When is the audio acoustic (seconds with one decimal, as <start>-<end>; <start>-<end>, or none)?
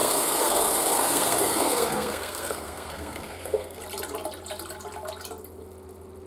3.8-6.3